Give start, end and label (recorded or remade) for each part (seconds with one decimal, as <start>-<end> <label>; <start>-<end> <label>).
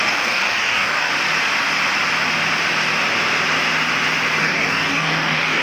0.0-1.1 remade; 1.1-4.4 recorded; 4.4-5.6 remade